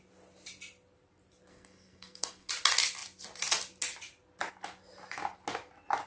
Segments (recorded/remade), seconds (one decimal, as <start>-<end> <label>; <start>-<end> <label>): 0.0-1.5 recorded; 1.5-2.5 remade; 2.5-6.1 recorded